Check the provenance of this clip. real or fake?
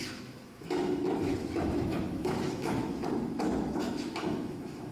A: fake